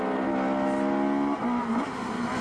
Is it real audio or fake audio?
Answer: real